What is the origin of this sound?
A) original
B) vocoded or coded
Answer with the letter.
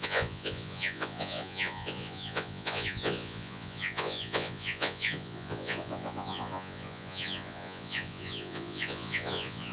B